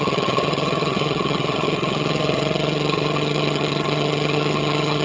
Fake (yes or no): yes